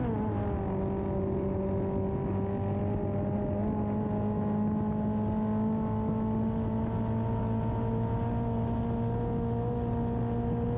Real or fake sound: real